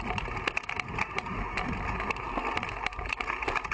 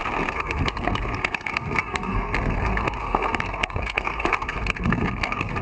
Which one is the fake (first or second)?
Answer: second